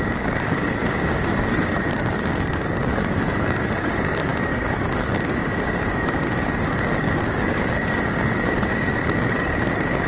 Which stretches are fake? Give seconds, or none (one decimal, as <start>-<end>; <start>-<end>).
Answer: 0.0-10.1